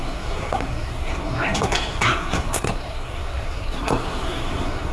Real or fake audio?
fake